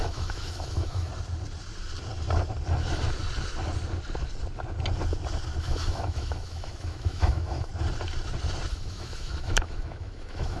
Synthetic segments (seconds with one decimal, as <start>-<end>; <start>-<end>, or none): 0.0-1.1; 5.6-7.7; 8.7-10.6